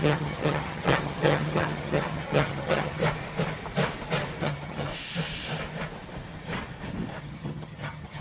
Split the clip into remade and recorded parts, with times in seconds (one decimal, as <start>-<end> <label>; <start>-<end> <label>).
0.0-3.0 remade; 3.0-4.4 recorded; 4.4-4.9 remade; 4.9-7.2 recorded; 7.2-8.2 remade